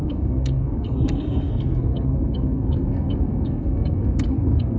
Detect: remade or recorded remade